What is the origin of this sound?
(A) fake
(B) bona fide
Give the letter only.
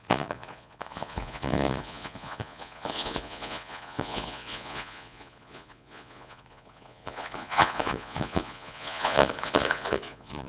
A